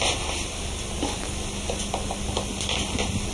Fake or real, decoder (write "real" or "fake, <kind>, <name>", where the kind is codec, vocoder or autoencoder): real